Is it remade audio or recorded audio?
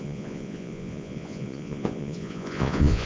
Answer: remade